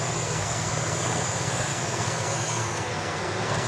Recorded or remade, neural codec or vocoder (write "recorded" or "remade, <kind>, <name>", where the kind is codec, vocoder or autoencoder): remade, codec, SNAC